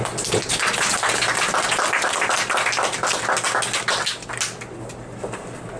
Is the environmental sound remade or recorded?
recorded